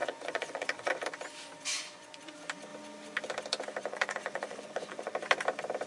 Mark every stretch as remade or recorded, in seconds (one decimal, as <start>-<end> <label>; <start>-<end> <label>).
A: 0.0-0.9 remade; 0.9-1.7 recorded; 1.7-2.2 remade; 2.2-3.8 recorded; 3.8-5.1 remade; 5.1-5.9 recorded